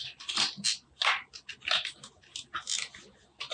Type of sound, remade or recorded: recorded